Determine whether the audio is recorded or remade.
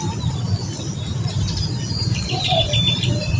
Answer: recorded